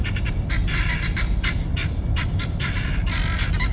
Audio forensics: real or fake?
fake